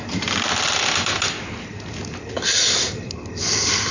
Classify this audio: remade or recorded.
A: recorded